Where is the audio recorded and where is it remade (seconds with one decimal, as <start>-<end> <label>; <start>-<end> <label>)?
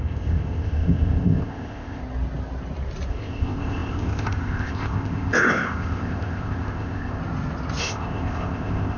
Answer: 0.0-2.0 remade; 2.0-3.1 recorded; 3.1-7.2 remade; 7.2-7.8 recorded; 7.8-9.0 remade